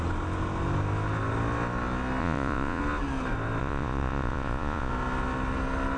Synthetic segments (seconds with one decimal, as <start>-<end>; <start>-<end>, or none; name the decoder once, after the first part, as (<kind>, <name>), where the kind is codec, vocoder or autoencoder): 2.2-2.8 (vocoder, Vocos); 3.6-4.9